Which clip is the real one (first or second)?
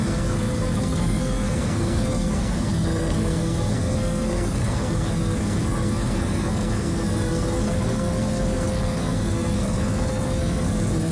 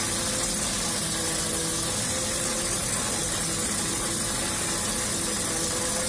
second